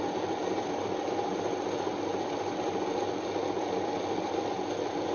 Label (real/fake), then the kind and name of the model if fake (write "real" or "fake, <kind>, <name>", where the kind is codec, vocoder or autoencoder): real